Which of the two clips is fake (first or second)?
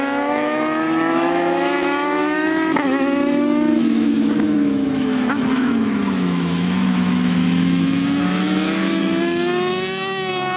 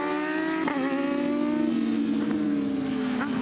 first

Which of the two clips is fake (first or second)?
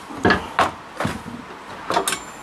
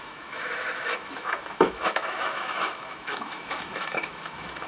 second